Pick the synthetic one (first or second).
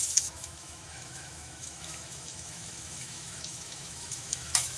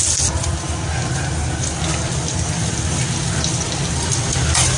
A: first